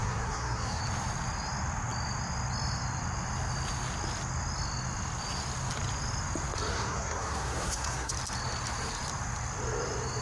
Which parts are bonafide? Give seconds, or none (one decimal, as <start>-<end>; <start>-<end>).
0.8-6.7; 8.1-10.2